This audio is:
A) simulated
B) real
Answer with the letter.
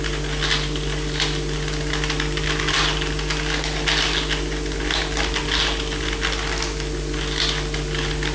B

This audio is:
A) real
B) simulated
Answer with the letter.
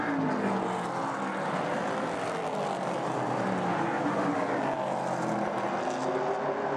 A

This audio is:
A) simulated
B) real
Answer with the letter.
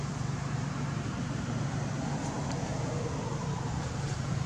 B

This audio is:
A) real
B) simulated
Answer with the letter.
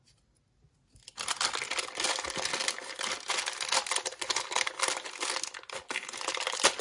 A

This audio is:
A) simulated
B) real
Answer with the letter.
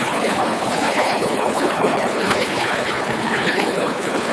A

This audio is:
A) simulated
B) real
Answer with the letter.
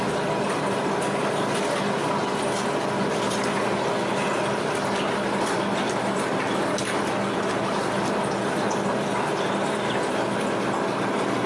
B